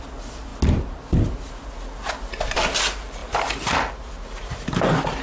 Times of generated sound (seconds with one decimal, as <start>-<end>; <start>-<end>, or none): none